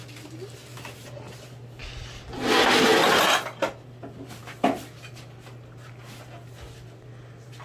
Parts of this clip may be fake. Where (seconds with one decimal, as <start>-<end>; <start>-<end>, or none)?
none